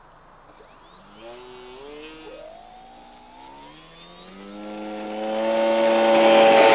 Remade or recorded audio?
recorded